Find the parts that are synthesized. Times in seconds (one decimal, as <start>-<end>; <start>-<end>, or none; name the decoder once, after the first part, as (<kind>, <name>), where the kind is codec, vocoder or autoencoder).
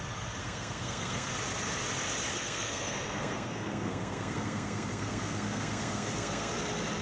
0.4-1.3 (codec, SNAC); 2.3-6.5